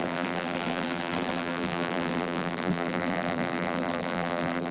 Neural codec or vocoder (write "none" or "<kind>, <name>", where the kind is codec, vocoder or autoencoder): vocoder, BigVGAN v2